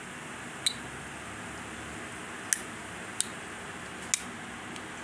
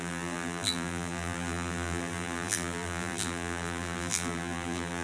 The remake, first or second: second